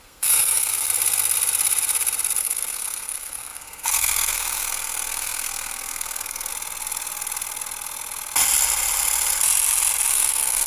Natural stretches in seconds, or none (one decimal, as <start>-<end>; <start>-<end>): 0.9-2.4; 6.5-10.1